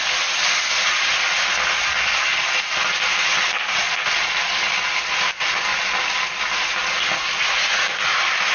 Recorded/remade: recorded